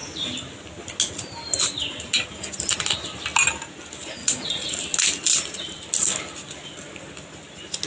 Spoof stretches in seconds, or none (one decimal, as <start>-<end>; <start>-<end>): 4.2-4.8